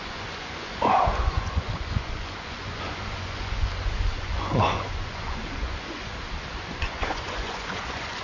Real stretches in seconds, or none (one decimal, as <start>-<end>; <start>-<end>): 6.1-6.6